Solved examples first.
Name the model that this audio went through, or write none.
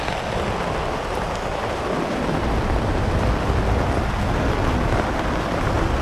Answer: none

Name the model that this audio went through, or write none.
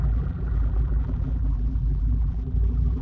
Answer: vocoder, BigVGAN v2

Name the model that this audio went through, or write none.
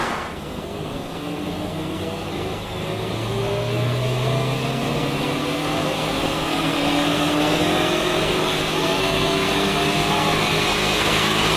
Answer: codec, SNAC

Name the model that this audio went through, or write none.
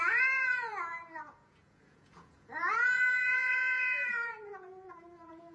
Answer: vocoder, Vocos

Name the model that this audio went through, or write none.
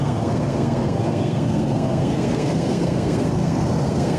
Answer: codec, SNAC